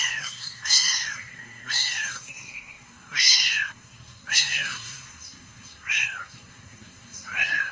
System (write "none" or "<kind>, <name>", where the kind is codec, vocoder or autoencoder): codec, SNAC